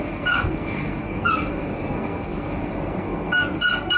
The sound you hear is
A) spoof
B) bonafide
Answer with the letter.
A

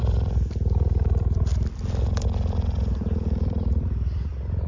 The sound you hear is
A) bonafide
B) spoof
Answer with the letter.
B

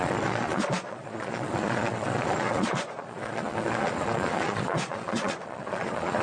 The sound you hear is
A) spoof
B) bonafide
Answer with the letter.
A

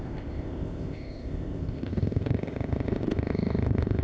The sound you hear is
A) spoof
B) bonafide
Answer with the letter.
A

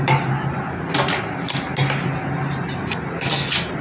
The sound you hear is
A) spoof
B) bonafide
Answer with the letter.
B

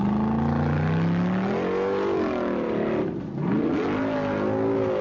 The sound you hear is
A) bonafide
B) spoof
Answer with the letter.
A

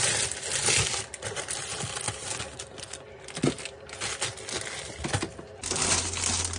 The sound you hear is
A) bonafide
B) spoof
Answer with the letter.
A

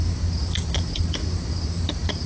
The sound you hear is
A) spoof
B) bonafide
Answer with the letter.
B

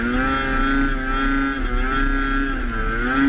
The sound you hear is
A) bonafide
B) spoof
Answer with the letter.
A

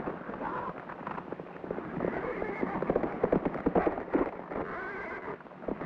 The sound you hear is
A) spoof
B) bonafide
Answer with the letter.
B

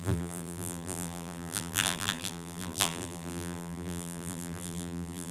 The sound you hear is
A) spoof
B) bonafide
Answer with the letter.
A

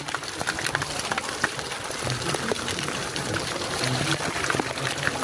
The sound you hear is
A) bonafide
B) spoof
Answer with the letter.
A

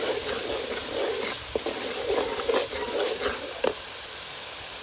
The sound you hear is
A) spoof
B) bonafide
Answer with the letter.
B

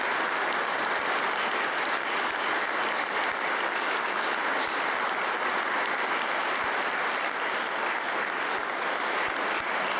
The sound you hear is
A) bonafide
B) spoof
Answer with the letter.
A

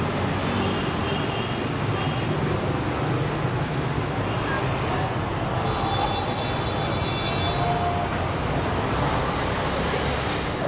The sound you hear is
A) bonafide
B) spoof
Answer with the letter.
A